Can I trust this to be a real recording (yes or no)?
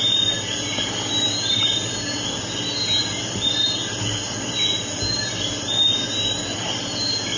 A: yes